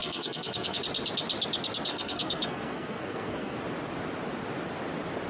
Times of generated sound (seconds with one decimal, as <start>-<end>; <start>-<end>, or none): 0.0-0.8; 1.9-3.6